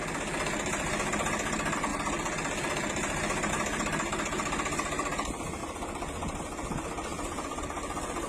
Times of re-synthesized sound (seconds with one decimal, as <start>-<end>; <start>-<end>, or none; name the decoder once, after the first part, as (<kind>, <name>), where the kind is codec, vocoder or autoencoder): 1.9-3.5 (vocoder, BigVGAN v2); 7.1-7.6